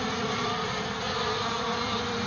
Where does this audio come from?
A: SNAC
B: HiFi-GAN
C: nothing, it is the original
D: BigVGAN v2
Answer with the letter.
D